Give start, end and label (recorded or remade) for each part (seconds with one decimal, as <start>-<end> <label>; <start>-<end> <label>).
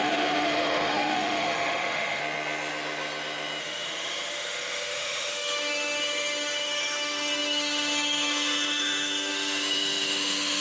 0.0-2.2 remade; 2.2-3.6 recorded; 3.6-10.6 remade